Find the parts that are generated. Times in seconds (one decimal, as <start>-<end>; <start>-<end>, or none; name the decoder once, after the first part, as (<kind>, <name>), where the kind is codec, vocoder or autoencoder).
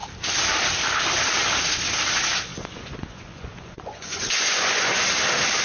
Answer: 2.5-5.0 (vocoder, Vocos)